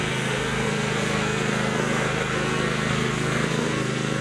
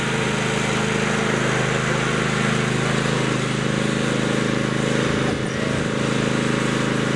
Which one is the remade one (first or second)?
first